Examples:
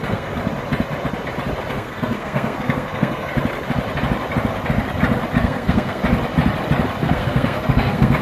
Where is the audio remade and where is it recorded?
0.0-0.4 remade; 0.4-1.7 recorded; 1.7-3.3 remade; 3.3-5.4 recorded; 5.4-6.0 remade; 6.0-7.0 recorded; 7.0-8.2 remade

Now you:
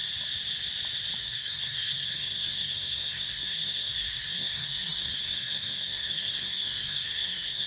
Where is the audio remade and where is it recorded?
0.0-1.2 recorded; 1.2-7.7 remade